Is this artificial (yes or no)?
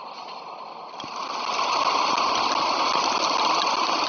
no